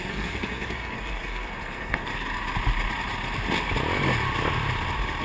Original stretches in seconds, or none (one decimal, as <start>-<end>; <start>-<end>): 2.1-5.2